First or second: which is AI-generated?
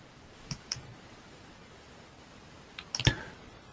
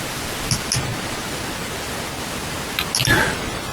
first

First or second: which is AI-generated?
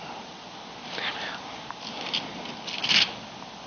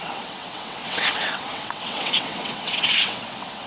second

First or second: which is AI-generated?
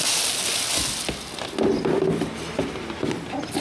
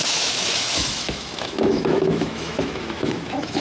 second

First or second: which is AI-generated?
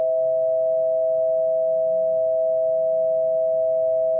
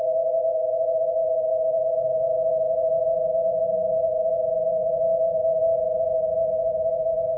second